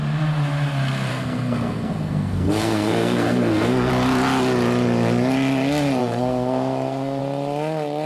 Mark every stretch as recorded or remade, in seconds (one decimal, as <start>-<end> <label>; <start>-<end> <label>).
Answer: 0.0-1.1 recorded; 1.1-3.9 remade; 3.9-6.0 recorded; 6.0-7.2 remade; 7.2-8.1 recorded